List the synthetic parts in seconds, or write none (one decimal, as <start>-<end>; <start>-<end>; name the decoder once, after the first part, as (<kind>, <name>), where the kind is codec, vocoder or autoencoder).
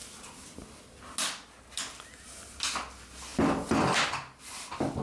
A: 0.0-0.9 (vocoder, BigVGAN v2)